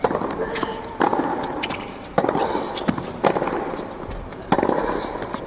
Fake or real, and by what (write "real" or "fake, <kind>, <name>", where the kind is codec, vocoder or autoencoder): real